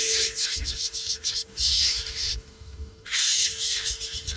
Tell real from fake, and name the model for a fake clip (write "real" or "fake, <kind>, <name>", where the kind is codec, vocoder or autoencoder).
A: fake, codec, DAC